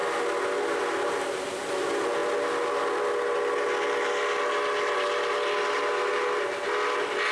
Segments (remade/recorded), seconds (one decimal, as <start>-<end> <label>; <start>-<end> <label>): 0.0-7.3 recorded

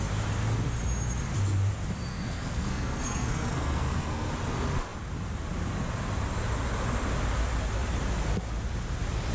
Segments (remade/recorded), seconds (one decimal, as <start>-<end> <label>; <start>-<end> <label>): 0.0-2.1 recorded; 2.1-4.3 remade; 4.3-9.3 recorded

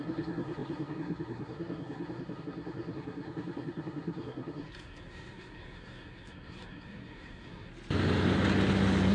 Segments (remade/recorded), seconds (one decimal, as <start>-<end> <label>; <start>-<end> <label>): 0.0-7.7 remade; 7.7-9.1 recorded

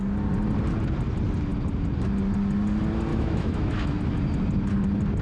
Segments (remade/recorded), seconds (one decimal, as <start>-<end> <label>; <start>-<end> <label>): 0.0-3.1 recorded; 3.1-4.0 remade; 4.0-5.2 recorded